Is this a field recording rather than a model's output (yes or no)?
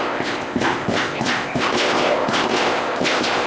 no